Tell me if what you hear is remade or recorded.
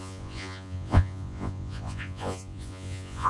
remade